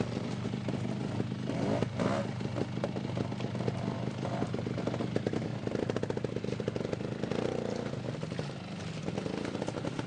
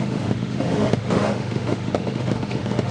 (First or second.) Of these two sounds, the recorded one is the first